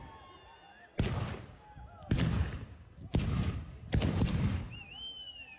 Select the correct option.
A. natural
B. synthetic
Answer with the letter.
A